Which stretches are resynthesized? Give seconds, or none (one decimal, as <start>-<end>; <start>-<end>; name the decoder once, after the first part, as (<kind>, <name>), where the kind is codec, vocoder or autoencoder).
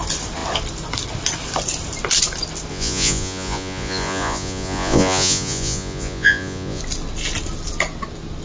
2.7-6.8 (vocoder, Vocos)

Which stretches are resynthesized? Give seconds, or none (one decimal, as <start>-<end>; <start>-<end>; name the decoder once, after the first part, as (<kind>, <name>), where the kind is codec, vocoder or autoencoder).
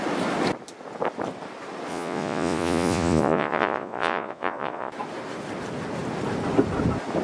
1.9-4.9 (vocoder, Vocos)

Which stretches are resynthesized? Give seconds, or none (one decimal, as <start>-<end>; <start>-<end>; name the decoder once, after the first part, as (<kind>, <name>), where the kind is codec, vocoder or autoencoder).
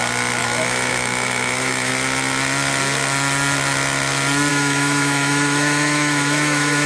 0.4-1.9 (autoencoder, DAC-VAE); 4.5-6.9